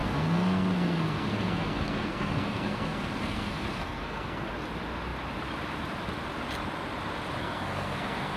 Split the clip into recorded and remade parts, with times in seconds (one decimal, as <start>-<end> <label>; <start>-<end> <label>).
0.0-4.5 remade; 4.5-7.4 recorded; 7.4-8.4 remade